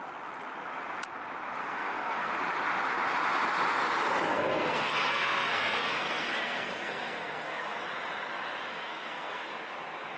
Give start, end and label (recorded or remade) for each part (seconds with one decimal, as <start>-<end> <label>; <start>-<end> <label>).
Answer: 0.0-1.6 recorded; 1.6-2.3 remade; 2.3-4.3 recorded; 4.3-7.8 remade; 7.8-8.7 recorded; 8.7-9.5 remade; 9.5-10.2 recorded